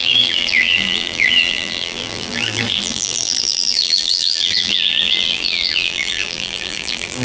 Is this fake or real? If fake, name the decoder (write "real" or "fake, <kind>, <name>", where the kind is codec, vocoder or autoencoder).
fake, vocoder, BigVGAN v2